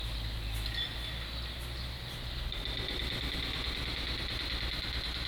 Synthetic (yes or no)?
no